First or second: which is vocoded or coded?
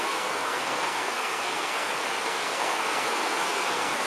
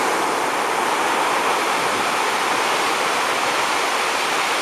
first